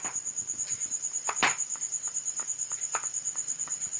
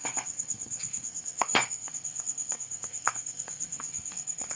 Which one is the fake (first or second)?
second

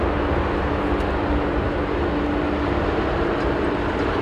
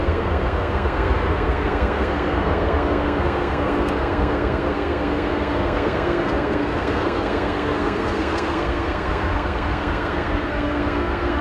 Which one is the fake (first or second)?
second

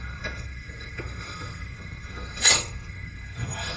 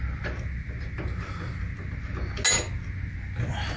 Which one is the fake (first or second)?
first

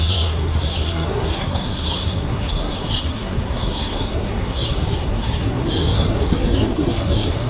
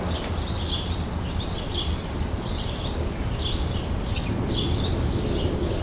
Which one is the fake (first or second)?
first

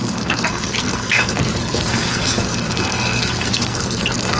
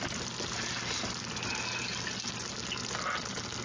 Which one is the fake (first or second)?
first